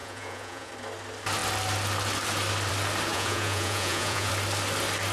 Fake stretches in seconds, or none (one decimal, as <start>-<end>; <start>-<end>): 0.0-0.7; 3.1-4.3